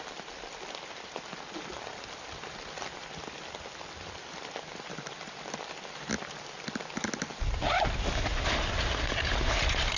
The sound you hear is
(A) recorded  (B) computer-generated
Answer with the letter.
A